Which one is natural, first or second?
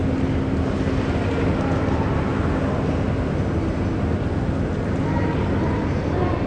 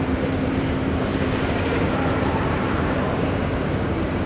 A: first